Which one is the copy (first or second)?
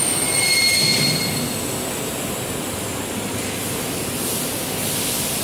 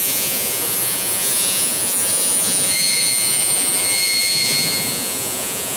second